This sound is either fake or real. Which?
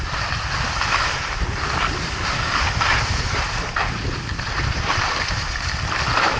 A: real